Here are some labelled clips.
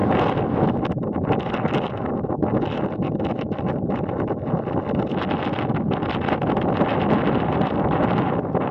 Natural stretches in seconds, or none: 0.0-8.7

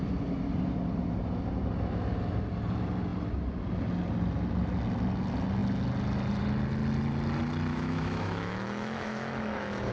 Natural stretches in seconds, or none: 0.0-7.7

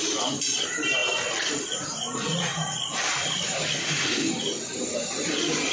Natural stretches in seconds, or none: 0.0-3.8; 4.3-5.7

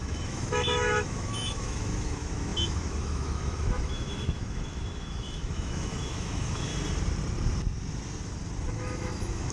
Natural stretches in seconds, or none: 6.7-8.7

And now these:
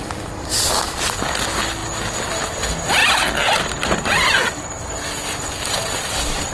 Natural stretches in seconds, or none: 0.0-6.5

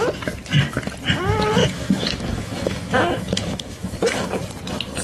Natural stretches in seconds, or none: 0.0-1.6; 4.4-5.0

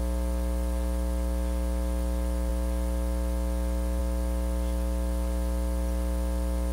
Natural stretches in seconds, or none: 0.0-6.7